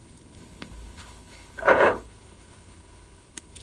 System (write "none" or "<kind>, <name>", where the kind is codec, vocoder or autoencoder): codec, HILCodec